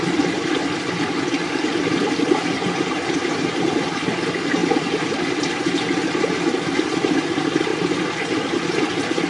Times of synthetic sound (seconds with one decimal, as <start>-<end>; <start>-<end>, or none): 2.6-3.9